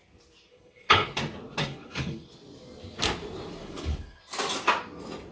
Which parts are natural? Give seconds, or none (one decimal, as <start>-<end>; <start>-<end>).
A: 0.0-0.5; 1.2-1.6; 2.3-3.6; 4.2-5.3